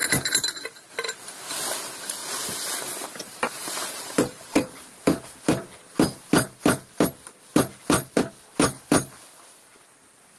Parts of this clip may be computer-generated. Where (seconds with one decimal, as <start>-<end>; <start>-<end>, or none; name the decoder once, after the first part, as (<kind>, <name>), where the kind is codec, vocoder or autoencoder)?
2.2-5.1 (vocoder, BigVGAN v2)